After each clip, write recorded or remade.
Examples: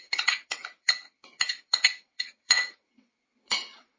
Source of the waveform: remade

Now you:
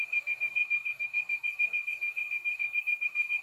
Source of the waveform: remade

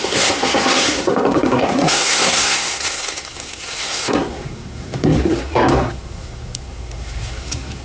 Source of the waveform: remade